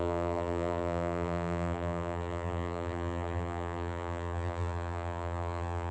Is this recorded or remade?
remade